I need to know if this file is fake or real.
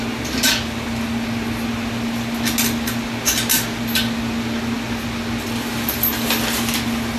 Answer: real